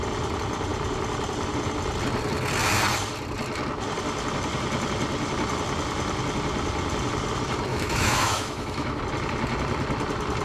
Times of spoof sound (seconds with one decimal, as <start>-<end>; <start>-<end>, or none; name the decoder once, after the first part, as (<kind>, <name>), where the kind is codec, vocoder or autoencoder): 7.7-9.0 (autoencoder, DAC-VAE)